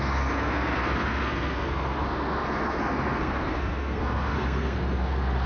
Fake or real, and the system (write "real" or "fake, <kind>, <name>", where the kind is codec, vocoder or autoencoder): fake, codec, SNAC